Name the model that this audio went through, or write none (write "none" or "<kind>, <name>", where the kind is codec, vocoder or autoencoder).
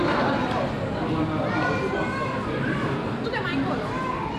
none